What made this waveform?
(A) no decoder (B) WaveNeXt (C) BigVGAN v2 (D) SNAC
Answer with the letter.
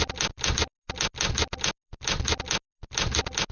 A